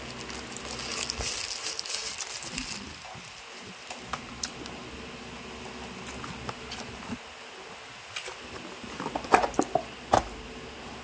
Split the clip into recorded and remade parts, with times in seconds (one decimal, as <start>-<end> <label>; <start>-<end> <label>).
0.0-11.0 recorded